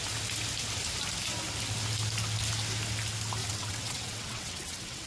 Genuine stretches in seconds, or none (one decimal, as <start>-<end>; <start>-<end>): 0.0-3.4